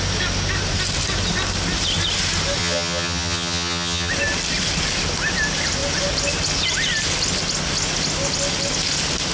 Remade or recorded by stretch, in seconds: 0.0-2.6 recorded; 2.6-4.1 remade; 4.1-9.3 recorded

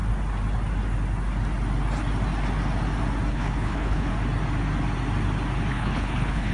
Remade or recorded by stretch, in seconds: 0.0-3.3 recorded; 3.3-4.1 remade; 4.1-5.7 recorded; 5.7-6.5 remade

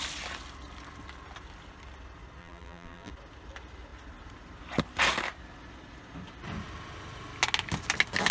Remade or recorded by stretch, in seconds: 0.0-2.4 recorded; 2.4-3.1 remade; 3.1-8.3 recorded

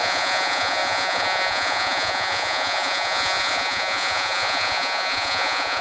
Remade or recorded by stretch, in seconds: 0.0-5.8 remade

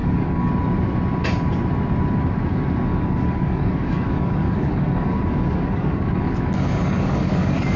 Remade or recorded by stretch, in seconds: 0.0-0.5 remade; 0.5-2.9 recorded; 2.9-7.8 remade

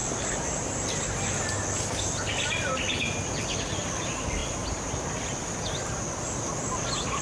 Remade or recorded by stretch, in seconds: 0.0-7.2 recorded

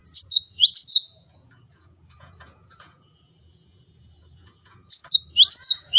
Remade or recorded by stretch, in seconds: 0.0-5.0 remade; 5.0-5.5 recorded; 5.5-6.0 remade

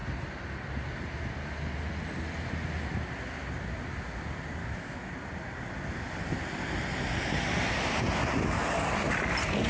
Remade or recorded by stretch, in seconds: 0.0-4.6 recorded; 4.6-5.1 remade; 5.1-9.7 recorded